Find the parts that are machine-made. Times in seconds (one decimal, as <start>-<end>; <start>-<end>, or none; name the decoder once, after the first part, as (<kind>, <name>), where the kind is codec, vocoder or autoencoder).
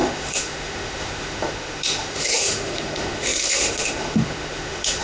0.0-5.0 (autoencoder, DAC-VAE)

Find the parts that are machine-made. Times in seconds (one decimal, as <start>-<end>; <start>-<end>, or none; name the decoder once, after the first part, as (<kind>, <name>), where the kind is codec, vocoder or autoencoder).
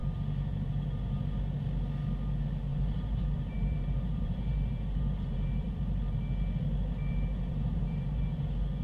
0.0-1.2 (vocoder, BigVGAN v2); 2.7-5.8; 7.1-8.2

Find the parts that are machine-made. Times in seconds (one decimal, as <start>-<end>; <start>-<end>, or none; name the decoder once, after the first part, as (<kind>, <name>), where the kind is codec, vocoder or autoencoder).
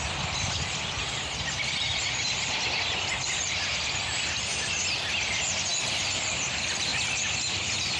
0.0-4.5 (vocoder, BigVGAN v2); 5.1-8.0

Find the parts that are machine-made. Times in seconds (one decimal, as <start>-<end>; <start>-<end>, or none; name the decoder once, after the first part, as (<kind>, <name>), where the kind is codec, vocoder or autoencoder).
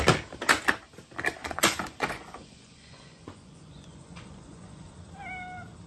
1.4-4.9 (vocoder, Vocos)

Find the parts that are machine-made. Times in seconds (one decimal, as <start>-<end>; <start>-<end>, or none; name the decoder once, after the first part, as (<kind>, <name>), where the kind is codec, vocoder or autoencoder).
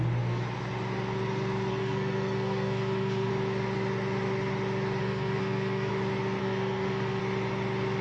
1.7-3.3 (codec, SNAC); 5.0-5.9; 6.4-7.2